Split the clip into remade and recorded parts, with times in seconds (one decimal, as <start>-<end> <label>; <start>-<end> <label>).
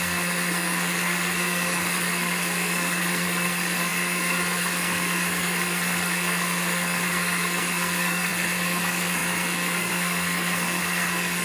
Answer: 0.0-11.4 remade